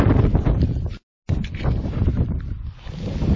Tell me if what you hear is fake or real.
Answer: real